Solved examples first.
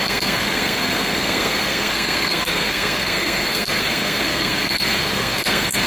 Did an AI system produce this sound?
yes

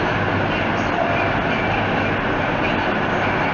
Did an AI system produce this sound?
no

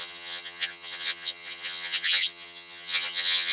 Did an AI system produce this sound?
yes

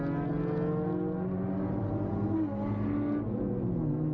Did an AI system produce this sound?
no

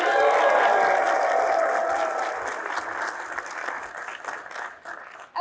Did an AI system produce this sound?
no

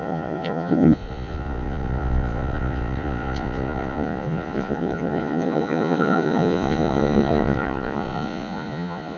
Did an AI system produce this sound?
yes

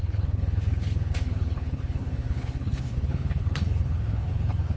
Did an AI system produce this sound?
yes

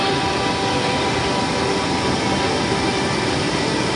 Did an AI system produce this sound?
no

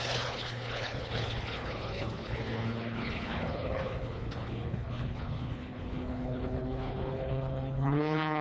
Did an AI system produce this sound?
yes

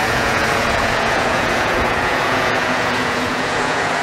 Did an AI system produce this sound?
yes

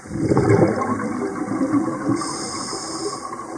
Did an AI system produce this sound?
no